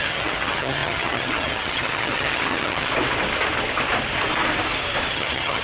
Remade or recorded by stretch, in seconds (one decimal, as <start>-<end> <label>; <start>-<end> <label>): 0.0-2.9 remade; 2.9-5.1 recorded; 5.1-5.6 remade